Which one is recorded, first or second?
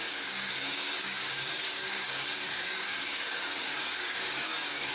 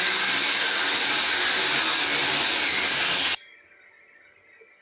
second